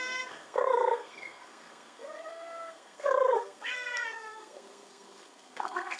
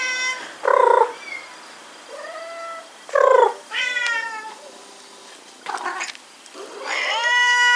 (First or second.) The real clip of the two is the second